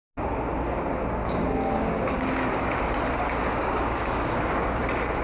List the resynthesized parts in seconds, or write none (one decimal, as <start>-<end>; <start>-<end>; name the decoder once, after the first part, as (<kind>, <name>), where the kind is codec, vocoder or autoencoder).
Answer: 1.2-2.8 (codec, DAC); 3.4-4.8

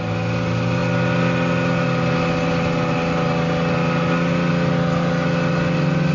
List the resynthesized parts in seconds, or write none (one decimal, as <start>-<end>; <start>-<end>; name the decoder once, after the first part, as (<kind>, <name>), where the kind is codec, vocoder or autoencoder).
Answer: none

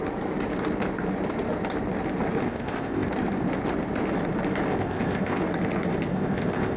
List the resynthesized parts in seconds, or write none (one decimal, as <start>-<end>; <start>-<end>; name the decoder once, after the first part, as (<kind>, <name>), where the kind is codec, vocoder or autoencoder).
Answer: 2.4-3.1 (codec, ZipCodec); 4.7-5.4; 6.1-6.8

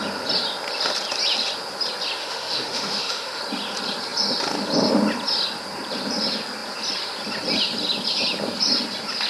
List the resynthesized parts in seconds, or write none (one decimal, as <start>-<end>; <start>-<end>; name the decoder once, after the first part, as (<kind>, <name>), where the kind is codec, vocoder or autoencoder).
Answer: 2.2-3.4 (autoencoder, DAC-VAE)

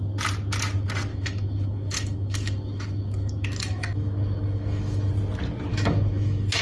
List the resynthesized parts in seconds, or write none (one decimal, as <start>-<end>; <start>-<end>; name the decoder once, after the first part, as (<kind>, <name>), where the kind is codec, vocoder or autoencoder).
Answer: 1.1-5.1 (autoencoder, DAC-VAE); 5.7-6.6